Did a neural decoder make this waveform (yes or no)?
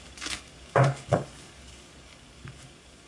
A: yes